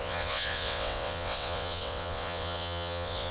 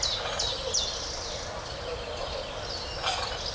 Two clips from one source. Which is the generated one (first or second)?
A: first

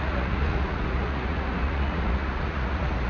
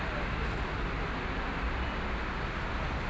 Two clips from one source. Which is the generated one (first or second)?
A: first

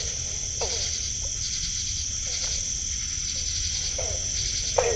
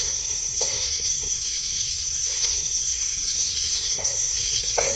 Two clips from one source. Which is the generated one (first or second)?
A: second